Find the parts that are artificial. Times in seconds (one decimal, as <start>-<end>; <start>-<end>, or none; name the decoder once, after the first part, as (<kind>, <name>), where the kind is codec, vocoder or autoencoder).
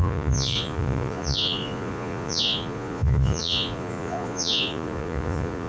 0.0-5.7 (vocoder, Vocos)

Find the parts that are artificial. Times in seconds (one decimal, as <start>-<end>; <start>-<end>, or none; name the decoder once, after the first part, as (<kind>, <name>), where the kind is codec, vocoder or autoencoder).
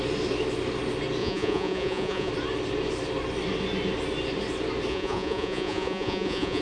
1.2-2.3 (vocoder, Vocos); 4.9-6.6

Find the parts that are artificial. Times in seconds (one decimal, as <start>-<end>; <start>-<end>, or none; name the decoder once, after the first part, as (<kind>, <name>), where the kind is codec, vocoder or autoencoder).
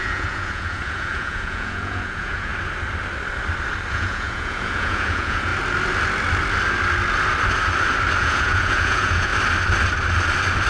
0.0-2.5 (vocoder, Vocos); 3.9-5.5; 8.2-9.3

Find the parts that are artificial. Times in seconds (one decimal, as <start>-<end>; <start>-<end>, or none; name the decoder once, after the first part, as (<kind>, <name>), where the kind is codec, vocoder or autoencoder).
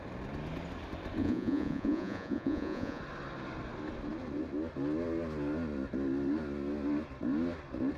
1.2-3.0 (vocoder, Vocos)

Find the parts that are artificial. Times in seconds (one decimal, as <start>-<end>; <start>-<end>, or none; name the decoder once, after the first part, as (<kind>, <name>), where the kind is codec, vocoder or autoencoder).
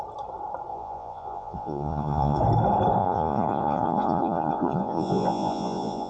0.7-2.4 (vocoder, Vocos); 3.0-6.1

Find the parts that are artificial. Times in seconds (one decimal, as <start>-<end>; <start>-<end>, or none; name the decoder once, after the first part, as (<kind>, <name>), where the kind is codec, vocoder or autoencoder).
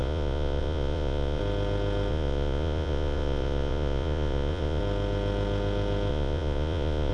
0.0-1.4 (vocoder, Vocos); 2.1-4.8; 6.1-7.1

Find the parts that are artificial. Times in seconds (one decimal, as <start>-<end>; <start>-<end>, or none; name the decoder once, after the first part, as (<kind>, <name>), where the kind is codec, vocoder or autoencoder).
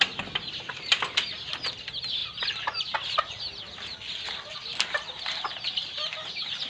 none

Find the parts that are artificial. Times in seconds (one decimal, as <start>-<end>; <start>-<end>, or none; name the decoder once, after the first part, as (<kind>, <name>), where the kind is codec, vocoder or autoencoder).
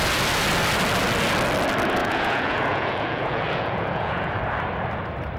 2.0-4.4 (vocoder, Vocos)